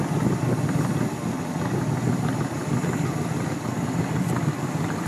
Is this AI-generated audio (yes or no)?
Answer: no